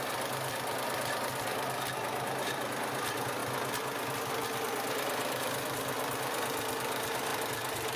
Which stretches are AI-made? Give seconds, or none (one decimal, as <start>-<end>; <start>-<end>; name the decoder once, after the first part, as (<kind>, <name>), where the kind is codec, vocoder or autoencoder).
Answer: none